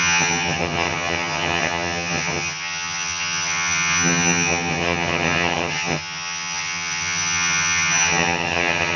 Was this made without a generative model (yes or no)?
no